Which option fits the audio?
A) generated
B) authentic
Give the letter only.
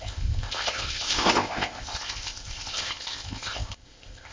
A